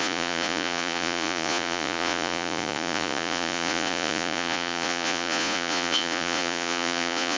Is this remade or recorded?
remade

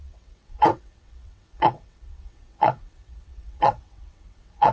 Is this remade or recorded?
remade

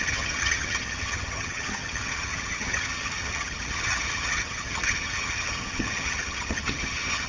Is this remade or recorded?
remade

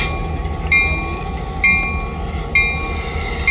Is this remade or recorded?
recorded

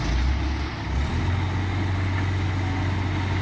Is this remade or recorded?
recorded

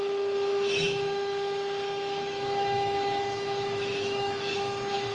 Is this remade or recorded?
remade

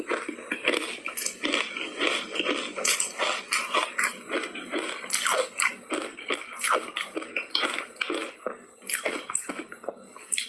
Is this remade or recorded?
recorded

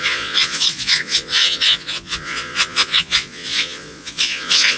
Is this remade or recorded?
remade